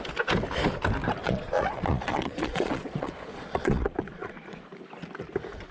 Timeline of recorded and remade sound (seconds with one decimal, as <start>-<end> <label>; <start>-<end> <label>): 0.0-1.2 recorded; 1.2-4.6 remade; 4.6-5.7 recorded